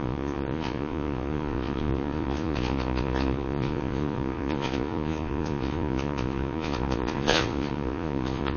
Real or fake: fake